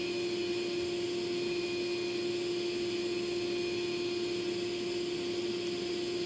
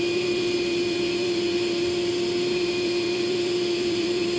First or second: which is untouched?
first